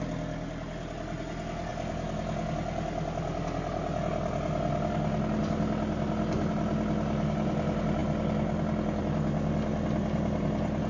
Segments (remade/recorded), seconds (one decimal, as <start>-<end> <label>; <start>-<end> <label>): 0.0-10.9 recorded